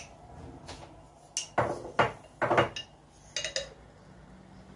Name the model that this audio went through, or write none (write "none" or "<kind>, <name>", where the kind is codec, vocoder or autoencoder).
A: none